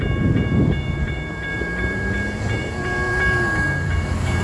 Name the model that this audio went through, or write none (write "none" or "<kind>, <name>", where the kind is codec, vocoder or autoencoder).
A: vocoder, BigVGAN v2